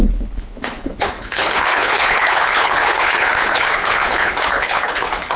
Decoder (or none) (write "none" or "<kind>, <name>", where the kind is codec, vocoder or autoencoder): codec, HILCodec